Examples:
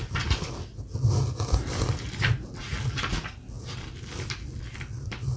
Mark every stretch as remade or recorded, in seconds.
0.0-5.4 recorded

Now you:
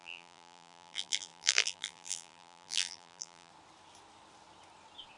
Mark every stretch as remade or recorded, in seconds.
0.0-3.5 remade; 3.5-5.2 recorded

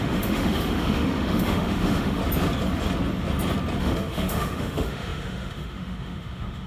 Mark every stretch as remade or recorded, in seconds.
0.0-2.2 remade; 2.2-3.8 recorded; 3.8-6.7 remade

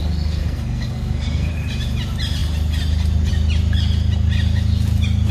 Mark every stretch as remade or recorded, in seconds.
0.0-1.5 remade; 1.5-5.3 recorded